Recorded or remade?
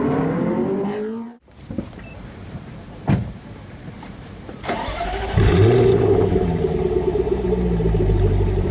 remade